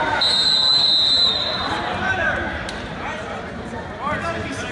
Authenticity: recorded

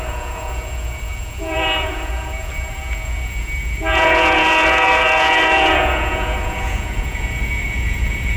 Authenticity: remade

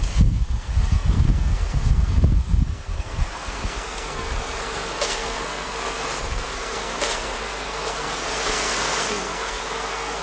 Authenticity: remade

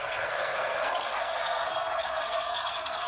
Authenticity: remade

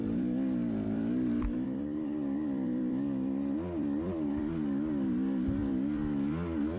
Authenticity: remade